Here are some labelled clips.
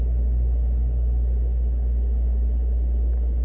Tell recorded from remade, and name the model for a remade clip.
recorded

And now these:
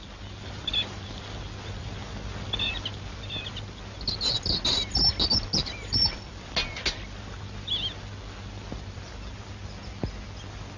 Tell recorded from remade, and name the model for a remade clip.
recorded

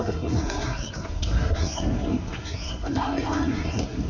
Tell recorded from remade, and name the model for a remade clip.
remade, codec, SNAC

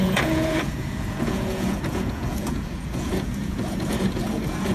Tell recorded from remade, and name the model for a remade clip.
remade, vocoder, Vocos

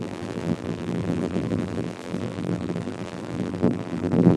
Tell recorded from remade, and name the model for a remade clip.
remade, vocoder, BigVGAN v2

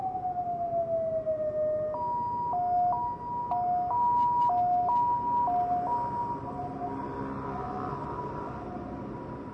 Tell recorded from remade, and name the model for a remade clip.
recorded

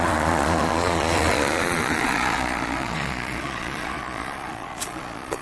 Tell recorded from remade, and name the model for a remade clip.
remade, vocoder, Vocos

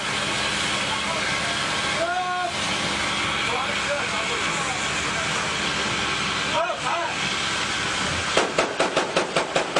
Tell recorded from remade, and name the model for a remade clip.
recorded